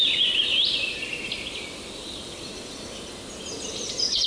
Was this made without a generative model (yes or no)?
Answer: yes